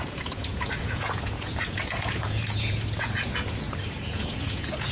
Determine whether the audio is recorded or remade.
remade